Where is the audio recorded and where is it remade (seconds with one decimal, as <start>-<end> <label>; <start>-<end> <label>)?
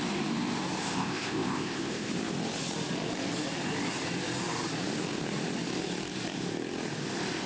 0.0-0.8 recorded; 0.8-2.1 remade; 2.1-7.5 recorded